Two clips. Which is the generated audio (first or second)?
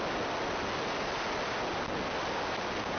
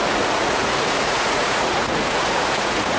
second